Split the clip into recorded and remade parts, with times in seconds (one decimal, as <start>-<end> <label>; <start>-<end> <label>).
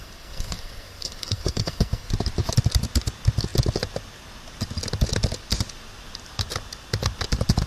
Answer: 0.0-2.1 remade; 2.1-7.7 recorded